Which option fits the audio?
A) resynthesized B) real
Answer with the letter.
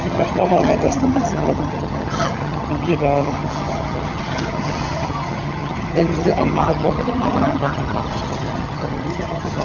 A